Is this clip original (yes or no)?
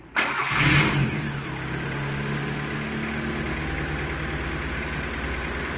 yes